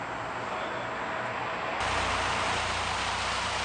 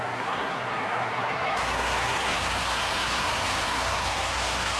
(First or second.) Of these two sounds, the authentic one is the first